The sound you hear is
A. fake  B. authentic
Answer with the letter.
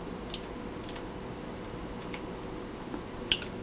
B